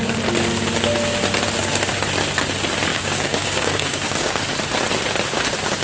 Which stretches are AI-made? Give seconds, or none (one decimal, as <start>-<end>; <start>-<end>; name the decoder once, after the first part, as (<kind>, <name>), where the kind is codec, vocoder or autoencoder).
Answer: 2.9-4.4 (codec, DAC)